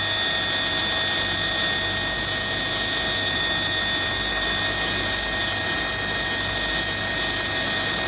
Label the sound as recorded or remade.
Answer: recorded